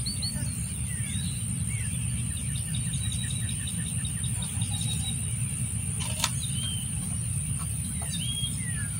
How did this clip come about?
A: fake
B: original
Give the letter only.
B